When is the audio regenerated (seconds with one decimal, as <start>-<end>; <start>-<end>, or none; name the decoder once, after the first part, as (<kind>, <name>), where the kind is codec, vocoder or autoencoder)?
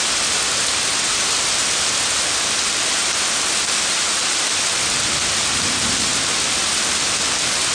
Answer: none